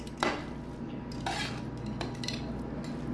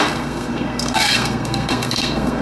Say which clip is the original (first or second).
first